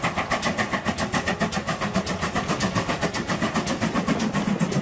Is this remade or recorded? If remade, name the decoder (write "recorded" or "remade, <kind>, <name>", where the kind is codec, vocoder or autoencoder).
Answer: recorded